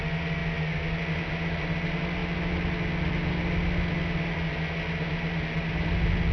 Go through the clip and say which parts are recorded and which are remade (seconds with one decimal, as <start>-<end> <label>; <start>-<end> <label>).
0.0-6.3 recorded